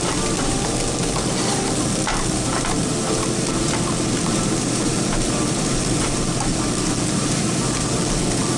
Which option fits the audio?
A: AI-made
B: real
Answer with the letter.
A